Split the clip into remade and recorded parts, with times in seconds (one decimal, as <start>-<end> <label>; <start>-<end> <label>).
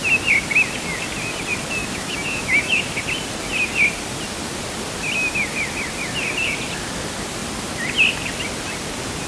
0.0-1.8 recorded; 1.8-2.8 remade; 2.8-9.3 recorded